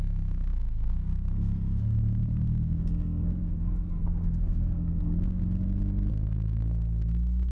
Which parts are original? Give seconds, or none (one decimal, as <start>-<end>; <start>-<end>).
5.4-6.1